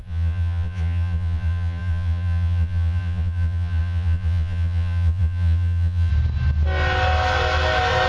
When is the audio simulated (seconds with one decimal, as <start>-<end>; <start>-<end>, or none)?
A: 0.0-6.1